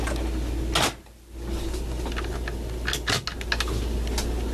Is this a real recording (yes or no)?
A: yes